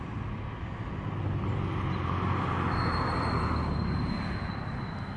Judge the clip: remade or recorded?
recorded